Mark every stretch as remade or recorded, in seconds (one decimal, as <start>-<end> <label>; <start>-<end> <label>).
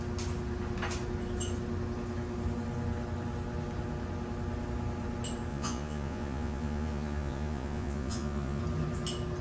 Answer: 0.0-5.5 recorded; 5.5-8.6 remade; 8.6-9.4 recorded